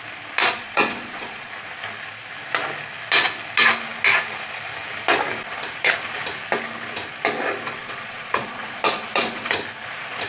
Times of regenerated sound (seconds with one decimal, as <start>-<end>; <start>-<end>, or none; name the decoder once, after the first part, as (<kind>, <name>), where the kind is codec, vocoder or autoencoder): 0.4-1.5 (vocoder, Vocos); 7.8-9.5

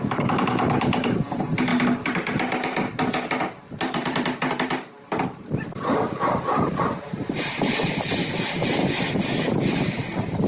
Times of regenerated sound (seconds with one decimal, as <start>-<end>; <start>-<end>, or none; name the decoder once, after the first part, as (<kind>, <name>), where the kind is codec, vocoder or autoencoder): 0.0-8.8 (vocoder, BigVGAN v2); 9.5-10.5

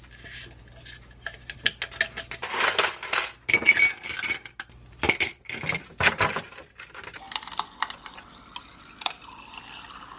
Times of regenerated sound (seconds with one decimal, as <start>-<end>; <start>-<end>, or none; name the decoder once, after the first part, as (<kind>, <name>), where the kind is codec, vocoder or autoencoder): none

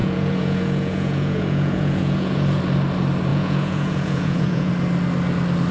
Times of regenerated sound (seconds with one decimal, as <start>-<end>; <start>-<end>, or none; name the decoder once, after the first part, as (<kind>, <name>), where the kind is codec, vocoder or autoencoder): 0.0-2.6 (vocoder, Vocos); 3.3-4.7

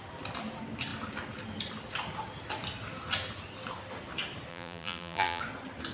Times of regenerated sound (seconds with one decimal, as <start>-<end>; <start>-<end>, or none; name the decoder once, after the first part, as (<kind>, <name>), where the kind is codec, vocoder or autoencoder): 4.5-5.4 (vocoder, BigVGAN v2)

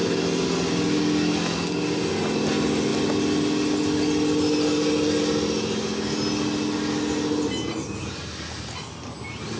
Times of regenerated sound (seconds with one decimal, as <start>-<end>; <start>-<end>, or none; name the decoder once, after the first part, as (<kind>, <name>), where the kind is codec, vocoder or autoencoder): none

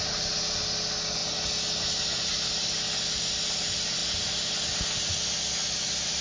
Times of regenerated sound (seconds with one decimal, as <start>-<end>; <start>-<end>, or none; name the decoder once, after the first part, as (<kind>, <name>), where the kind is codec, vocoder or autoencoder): none

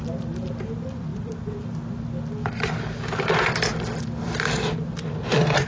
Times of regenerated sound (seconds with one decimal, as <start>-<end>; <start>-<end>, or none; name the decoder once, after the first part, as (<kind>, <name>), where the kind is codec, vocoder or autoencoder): none